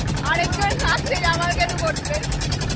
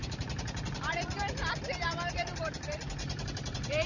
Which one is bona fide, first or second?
first